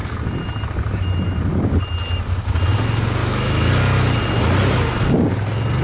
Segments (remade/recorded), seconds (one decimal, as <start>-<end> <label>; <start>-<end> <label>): 0.0-3.2 recorded; 3.2-3.7 remade; 3.7-5.8 recorded